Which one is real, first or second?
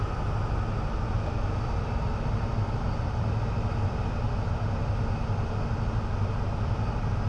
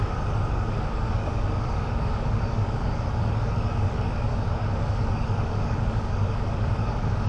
first